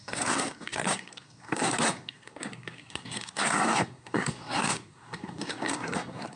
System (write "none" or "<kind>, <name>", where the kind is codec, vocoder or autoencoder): codec, SNAC